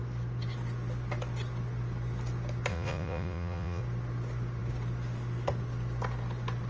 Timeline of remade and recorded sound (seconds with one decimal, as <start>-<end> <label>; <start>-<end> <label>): 0.0-2.7 recorded; 2.7-3.8 remade; 3.8-6.7 recorded